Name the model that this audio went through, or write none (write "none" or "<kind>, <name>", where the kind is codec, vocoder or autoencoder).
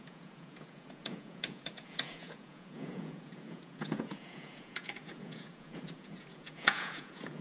vocoder, Vocos